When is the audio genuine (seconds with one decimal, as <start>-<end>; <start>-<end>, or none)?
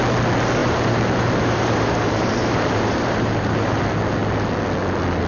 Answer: 0.0-0.6; 3.8-5.3